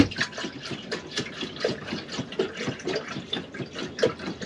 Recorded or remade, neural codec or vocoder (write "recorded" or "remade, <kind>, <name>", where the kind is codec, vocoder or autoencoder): recorded